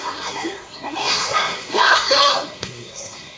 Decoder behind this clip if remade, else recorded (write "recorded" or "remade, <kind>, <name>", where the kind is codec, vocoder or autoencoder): remade, codec, SNAC